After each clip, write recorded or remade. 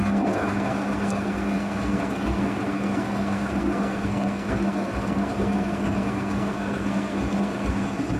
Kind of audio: remade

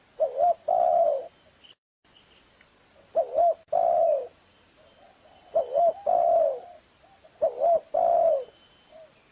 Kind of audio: recorded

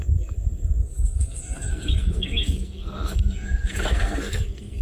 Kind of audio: remade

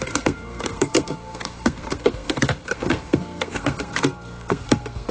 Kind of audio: remade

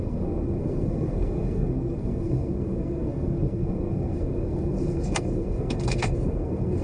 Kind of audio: remade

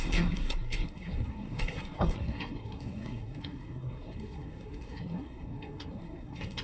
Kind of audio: remade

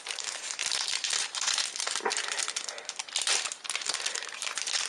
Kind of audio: recorded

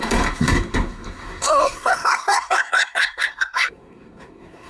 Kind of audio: remade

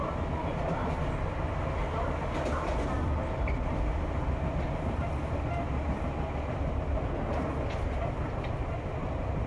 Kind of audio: recorded